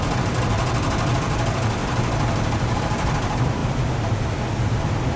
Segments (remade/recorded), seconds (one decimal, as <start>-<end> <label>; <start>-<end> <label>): 0.0-1.8 recorded; 1.8-2.8 remade; 2.8-5.2 recorded